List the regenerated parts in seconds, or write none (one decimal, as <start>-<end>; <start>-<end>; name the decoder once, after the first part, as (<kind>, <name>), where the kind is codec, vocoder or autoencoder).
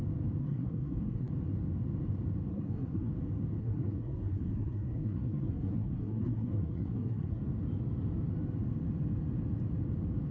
0.4-1.3 (codec, SNAC); 2.5-3.1; 3.6-7.4